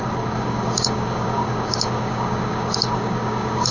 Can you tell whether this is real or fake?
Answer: fake